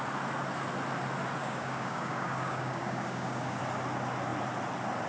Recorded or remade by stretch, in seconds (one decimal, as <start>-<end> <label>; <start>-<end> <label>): 0.0-1.4 recorded; 1.4-3.6 remade; 3.6-5.1 recorded